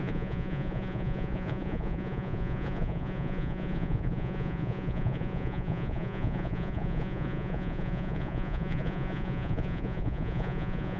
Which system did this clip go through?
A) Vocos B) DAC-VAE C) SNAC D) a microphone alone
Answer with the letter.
A